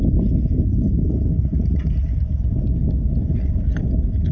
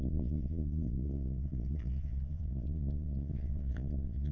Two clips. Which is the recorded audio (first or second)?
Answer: first